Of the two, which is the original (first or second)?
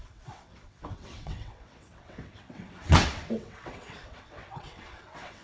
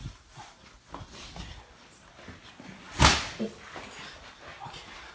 second